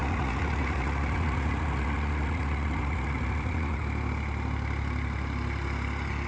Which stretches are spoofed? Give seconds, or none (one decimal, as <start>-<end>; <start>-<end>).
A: 0.0-3.8

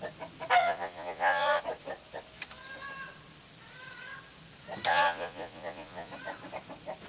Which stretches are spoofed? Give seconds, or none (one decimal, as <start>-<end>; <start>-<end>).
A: 0.6-1.6; 4.9-6.1